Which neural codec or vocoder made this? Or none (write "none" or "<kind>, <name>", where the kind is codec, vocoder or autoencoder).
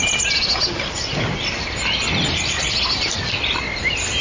none